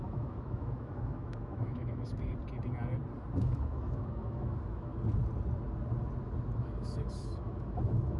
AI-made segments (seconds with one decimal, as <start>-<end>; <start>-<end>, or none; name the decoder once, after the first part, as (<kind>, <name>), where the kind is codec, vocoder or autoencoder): 0.0-2.1 (autoencoder, DAC-VAE); 3.4-4.9; 6.6-8.2

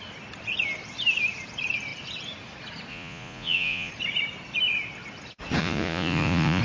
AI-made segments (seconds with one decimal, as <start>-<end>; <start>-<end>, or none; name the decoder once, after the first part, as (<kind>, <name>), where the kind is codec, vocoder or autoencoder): 2.9-3.9 (vocoder, Vocos); 5.6-6.6